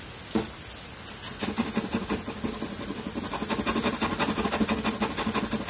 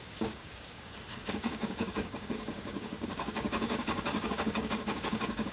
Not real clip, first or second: second